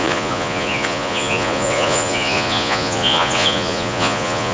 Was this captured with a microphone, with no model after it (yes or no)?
no